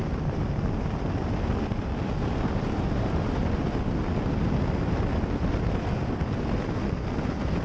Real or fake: real